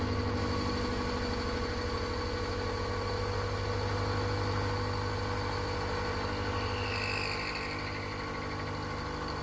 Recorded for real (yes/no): yes